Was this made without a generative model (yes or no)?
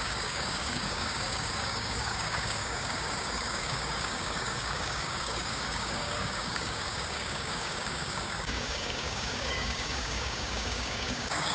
no